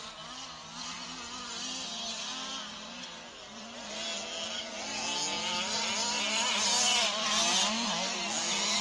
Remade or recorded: recorded